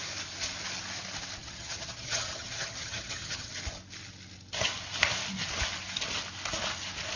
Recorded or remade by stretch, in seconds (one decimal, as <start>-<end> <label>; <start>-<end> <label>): 0.0-1.4 recorded; 1.4-3.5 remade; 3.5-7.2 recorded